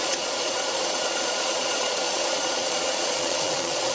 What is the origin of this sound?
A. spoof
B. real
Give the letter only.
A